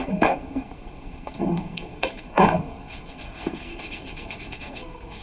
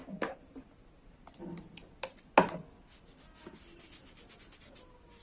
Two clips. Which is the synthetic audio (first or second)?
first